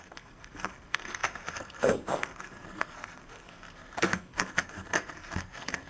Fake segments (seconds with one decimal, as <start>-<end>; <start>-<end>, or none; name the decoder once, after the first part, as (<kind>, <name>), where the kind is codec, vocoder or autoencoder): 0.0-5.9 (codec, SNAC)